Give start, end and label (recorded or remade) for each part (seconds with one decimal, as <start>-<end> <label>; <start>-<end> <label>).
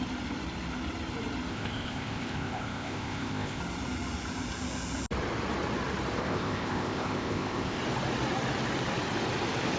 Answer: 0.0-1.5 recorded; 1.5-3.6 remade; 3.6-6.2 recorded; 6.2-7.8 remade; 7.8-9.8 recorded